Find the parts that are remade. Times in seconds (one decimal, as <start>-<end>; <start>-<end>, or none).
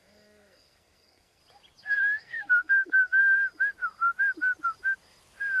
0.0-1.4; 2.0-3.2